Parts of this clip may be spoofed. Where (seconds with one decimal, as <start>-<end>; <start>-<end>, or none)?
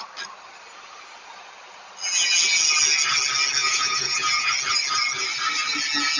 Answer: 3.6-4.5